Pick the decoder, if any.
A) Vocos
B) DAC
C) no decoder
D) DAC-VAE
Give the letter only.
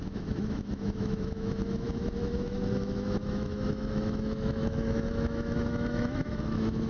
D